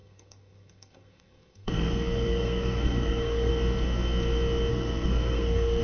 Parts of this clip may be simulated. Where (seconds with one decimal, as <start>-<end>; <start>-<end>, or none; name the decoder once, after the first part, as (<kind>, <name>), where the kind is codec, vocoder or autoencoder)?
0.0-3.5 (codec, SNAC); 4.7-5.8